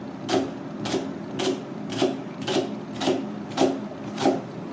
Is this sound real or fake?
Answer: real